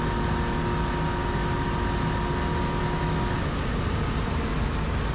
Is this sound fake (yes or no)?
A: no